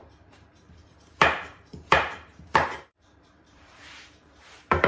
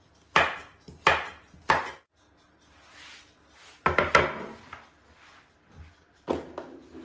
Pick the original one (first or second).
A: second